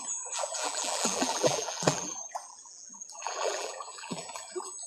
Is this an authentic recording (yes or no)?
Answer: no